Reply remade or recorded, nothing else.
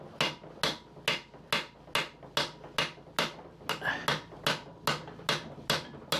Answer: recorded